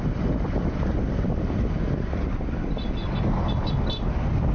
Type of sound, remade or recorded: recorded